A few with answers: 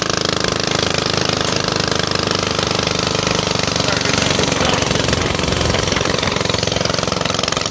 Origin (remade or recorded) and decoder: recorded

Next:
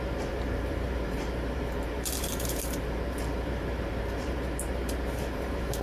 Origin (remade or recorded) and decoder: remade, vocoder, BigVGAN v2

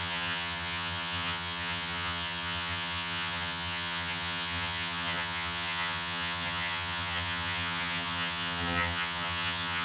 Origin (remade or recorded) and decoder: remade, vocoder, HiFi-GAN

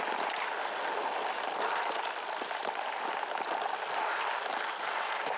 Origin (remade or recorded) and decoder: recorded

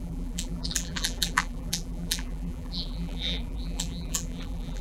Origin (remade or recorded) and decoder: remade, vocoder, BigVGAN v2